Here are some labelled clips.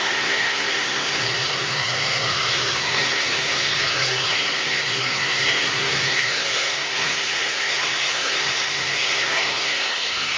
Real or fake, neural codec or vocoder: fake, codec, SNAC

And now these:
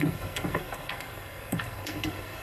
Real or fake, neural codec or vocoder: fake, codec, SNAC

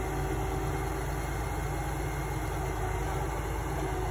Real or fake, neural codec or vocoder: real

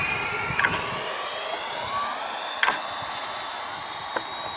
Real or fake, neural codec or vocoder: real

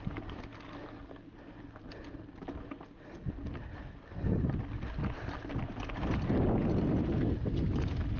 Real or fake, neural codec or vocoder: real